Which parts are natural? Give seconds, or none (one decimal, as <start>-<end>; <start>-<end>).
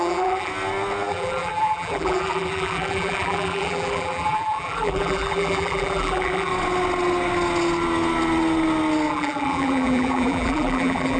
0.5-1.1; 6.5-9.1